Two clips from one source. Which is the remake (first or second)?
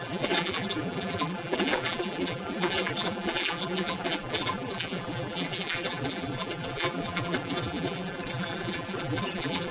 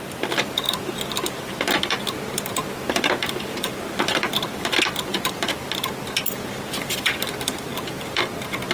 first